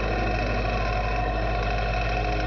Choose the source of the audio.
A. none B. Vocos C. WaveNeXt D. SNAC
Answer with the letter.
A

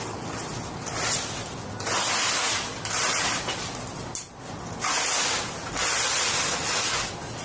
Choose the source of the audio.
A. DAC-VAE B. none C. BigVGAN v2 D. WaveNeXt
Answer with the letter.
B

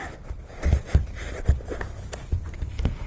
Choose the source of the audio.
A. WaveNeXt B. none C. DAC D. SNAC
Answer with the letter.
B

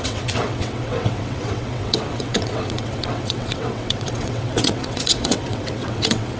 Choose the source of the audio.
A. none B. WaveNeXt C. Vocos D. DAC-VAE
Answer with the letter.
B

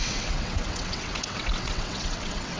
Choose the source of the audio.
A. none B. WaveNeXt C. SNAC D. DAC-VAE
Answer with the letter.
B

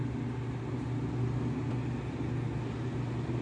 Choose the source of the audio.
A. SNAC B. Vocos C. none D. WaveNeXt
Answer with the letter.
C